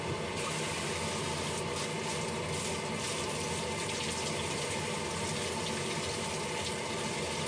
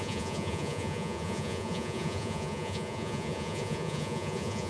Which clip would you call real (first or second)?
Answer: first